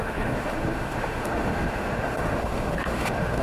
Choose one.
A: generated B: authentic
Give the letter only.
A